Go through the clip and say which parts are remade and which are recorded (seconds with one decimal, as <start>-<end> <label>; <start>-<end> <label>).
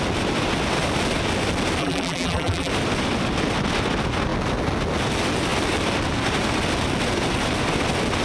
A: 0.0-1.8 recorded; 1.8-2.7 remade; 2.7-8.2 recorded